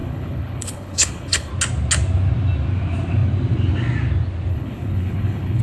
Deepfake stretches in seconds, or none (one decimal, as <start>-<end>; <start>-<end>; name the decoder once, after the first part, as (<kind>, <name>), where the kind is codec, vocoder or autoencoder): 0.0-1.5 (codec, HILCodec); 4.5-5.6